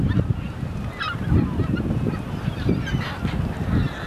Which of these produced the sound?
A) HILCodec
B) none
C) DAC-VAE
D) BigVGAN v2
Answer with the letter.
B